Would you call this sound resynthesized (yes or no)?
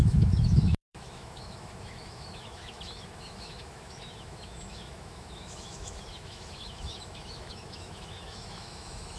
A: yes